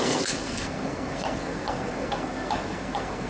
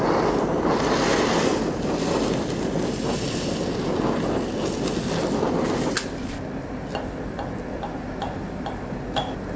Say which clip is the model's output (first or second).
first